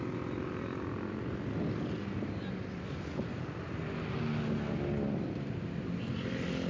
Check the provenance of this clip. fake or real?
real